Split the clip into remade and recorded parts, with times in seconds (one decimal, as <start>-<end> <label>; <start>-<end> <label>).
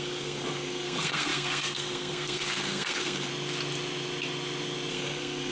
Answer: 0.0-3.3 remade; 3.3-4.9 recorded; 4.9-5.5 remade